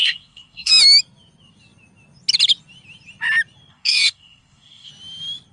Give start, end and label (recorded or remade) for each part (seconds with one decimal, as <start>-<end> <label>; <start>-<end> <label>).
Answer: 0.0-0.7 remade; 0.7-3.7 recorded; 3.7-4.9 remade; 4.9-5.5 recorded